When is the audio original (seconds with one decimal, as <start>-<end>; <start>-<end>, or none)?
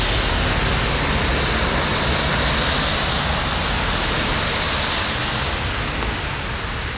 0.0-7.0